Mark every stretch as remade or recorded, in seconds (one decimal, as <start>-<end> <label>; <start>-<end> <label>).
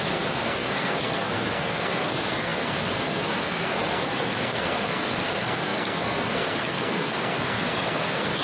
0.0-8.4 remade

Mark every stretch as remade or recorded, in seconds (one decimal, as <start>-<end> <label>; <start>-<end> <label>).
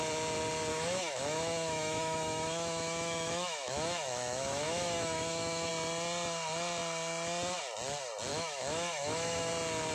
0.0-0.7 recorded; 0.7-5.7 remade; 5.7-8.3 recorded; 8.3-9.5 remade; 9.5-9.9 recorded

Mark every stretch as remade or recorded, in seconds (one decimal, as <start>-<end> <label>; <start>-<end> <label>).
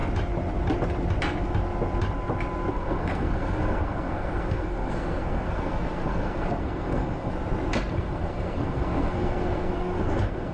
0.0-2.7 recorded; 2.7-7.3 remade; 7.3-7.9 recorded; 7.9-10.5 remade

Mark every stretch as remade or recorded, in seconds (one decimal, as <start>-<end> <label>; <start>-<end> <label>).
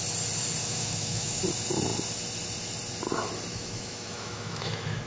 0.0-0.6 recorded; 0.6-1.4 remade; 1.4-3.5 recorded; 3.5-5.1 remade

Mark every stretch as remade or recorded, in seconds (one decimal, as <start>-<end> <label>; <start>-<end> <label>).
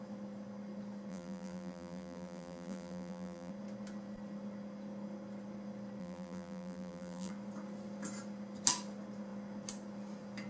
0.0-1.1 recorded; 1.1-3.5 remade; 3.5-6.0 recorded; 6.0-7.3 remade; 7.3-10.5 recorded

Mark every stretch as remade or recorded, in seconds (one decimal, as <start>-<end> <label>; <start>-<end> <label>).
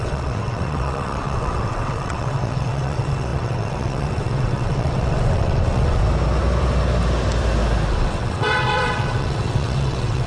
0.0-6.0 remade; 6.0-7.9 recorded; 7.9-10.3 remade